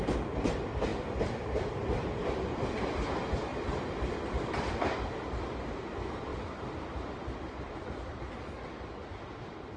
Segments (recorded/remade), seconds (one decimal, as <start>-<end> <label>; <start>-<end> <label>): 0.0-0.9 recorded; 0.9-1.7 remade; 1.7-3.5 recorded; 3.5-4.2 remade; 4.2-6.3 recorded; 6.3-8.5 remade; 8.5-9.8 recorded